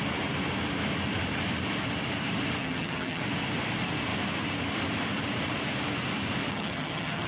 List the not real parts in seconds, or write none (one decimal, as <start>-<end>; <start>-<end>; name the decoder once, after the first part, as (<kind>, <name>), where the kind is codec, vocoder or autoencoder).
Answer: 2.6-3.2 (vocoder, HiFi-GAN); 6.5-7.3